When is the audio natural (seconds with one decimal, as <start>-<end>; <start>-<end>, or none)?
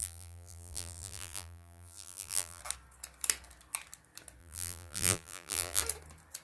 2.6-4.4; 5.8-6.4